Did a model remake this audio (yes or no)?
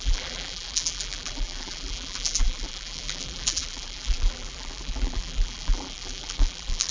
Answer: yes